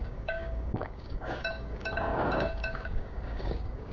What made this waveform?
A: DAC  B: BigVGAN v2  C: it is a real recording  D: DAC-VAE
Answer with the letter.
A